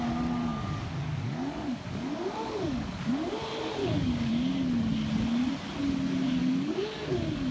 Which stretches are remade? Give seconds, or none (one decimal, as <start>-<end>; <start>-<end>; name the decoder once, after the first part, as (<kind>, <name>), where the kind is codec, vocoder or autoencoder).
0.4-3.4 (codec, DAC); 3.8-4.3; 6.4-7.5